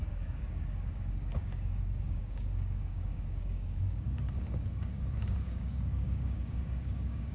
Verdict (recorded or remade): remade